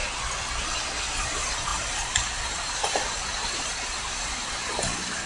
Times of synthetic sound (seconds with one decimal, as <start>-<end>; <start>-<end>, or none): 1.2-5.3